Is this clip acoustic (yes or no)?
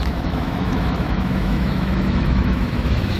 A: no